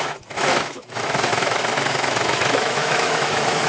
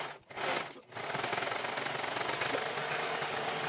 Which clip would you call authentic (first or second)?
second